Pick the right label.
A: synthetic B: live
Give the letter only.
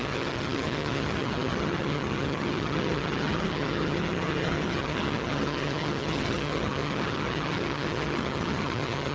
A